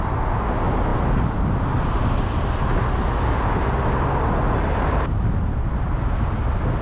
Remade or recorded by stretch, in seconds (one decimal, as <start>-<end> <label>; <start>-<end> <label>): 0.0-6.8 recorded